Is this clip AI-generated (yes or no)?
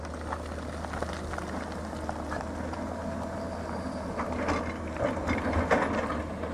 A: no